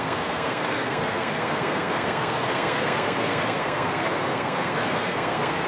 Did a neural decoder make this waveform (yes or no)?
yes